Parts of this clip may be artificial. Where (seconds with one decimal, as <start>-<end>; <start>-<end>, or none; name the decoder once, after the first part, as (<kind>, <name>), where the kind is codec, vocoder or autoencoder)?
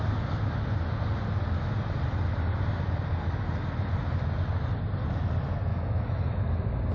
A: 5.7-6.4 (autoencoder, DAC-VAE)